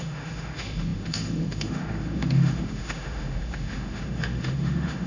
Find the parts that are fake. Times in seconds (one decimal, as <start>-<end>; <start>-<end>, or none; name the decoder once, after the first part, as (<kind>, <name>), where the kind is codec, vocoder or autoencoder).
0.0-5.1 (autoencoder, DAC-VAE)